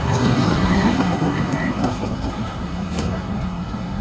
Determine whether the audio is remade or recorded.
remade